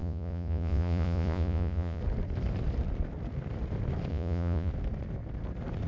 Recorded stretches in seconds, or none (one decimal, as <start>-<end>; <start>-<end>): 2.0-4.1; 4.7-5.9